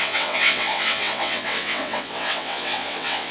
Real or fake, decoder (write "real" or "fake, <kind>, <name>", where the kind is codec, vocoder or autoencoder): fake, vocoder, WaveNeXt